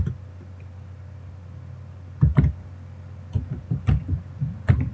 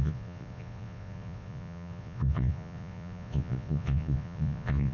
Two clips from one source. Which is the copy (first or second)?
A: second